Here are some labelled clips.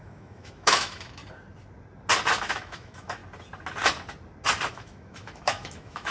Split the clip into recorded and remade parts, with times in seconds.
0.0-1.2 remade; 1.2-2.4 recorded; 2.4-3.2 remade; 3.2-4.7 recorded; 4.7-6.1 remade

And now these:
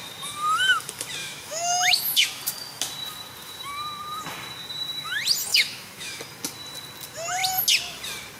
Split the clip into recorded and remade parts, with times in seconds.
0.0-1.2 recorded; 1.2-2.4 remade; 2.4-5.5 recorded; 5.5-6.2 remade; 6.2-8.4 recorded

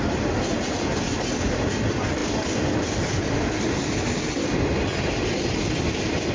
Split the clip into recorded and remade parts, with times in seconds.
0.0-6.3 recorded